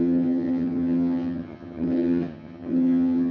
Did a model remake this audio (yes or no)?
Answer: yes